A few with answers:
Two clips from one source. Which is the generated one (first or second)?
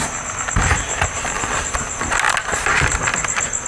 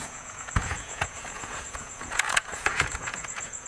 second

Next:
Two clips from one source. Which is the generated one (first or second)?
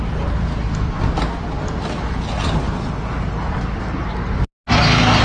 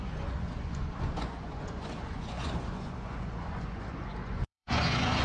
second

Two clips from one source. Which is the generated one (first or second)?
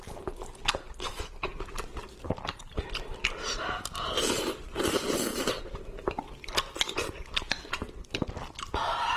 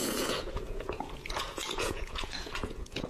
second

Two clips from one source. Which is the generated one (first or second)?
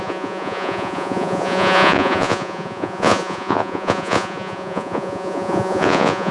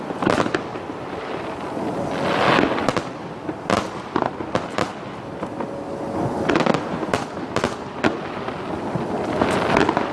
first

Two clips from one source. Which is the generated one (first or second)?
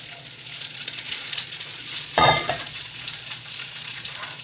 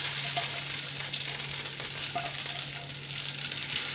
first